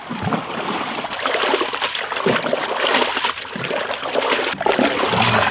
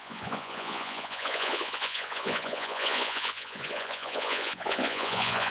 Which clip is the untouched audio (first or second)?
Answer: first